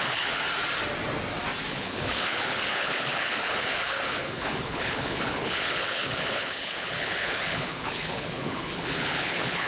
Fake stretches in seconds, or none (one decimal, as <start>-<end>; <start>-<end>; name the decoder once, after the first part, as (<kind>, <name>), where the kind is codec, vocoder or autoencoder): 0.0-0.4 (codec, HILCodec); 1.7-9.7